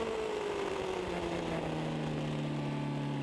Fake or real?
real